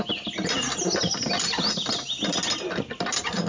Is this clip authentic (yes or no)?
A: yes